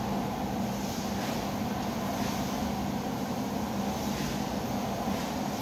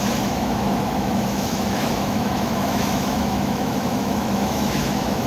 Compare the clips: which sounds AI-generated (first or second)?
second